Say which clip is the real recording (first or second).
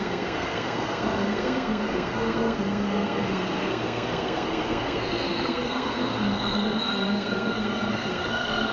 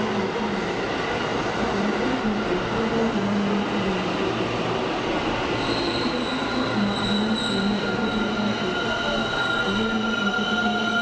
second